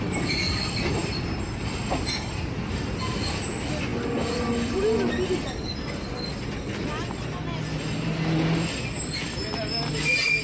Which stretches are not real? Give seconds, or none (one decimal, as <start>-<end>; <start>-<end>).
none